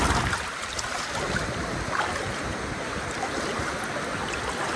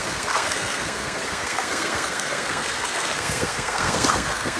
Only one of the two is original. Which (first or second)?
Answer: first